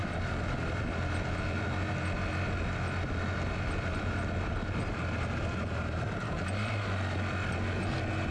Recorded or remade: recorded